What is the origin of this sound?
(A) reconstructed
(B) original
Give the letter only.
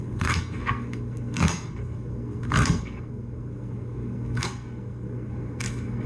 A